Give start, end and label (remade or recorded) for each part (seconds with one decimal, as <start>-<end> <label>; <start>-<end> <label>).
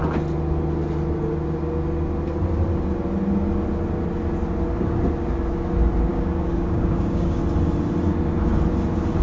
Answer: 0.0-6.1 recorded; 6.1-7.4 remade; 7.4-9.2 recorded